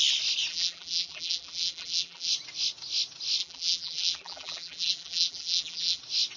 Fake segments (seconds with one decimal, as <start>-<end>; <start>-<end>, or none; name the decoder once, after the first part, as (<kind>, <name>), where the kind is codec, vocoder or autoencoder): 0.5-2.3 (vocoder, BigVGAN v2); 3.4-6.0